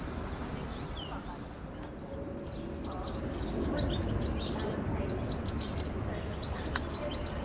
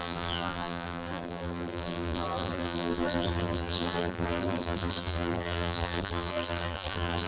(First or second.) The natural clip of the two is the first